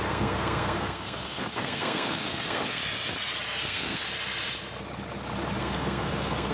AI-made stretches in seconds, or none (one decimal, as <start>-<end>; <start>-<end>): 0.0-2.8; 3.6-4.0; 5.6-6.5